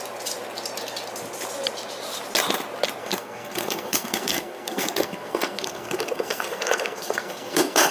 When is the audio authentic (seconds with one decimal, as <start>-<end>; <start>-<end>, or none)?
0.0-3.0